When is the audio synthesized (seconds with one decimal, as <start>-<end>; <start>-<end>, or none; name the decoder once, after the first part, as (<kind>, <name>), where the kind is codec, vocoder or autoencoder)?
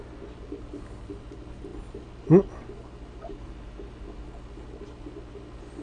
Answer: none